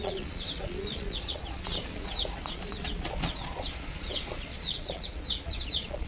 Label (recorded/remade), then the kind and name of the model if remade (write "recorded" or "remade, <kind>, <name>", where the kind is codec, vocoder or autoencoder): remade, vocoder, Vocos